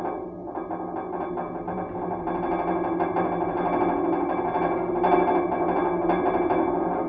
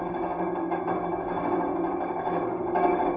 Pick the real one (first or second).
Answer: first